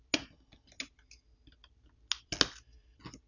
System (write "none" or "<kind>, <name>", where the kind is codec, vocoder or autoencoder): none